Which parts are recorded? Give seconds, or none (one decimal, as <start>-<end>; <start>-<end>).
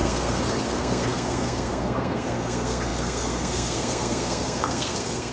none